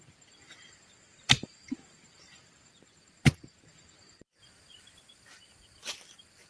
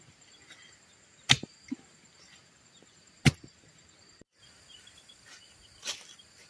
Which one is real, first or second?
second